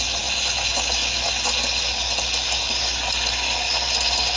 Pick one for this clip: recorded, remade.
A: recorded